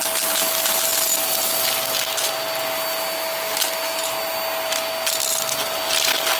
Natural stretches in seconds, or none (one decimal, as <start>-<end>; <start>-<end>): 0.0-6.4